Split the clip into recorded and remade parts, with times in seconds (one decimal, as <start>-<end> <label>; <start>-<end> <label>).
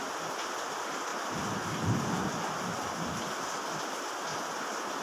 0.0-5.0 recorded